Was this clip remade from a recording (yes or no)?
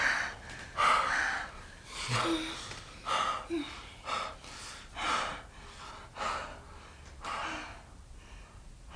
no